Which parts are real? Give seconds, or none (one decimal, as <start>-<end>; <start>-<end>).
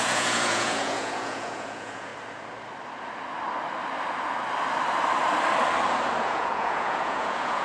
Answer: 2.1-6.2